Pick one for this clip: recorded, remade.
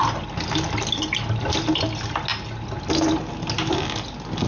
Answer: recorded